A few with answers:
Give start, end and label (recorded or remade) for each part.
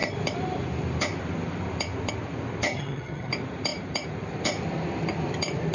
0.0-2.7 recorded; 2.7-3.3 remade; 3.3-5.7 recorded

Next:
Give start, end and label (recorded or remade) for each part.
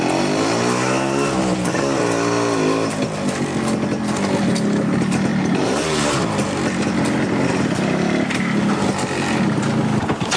0.0-5.3 recorded; 5.3-6.2 remade; 6.2-10.4 recorded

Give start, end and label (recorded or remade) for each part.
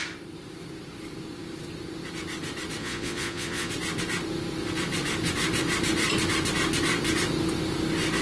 0.0-2.8 recorded; 2.8-3.7 remade; 3.7-8.2 recorded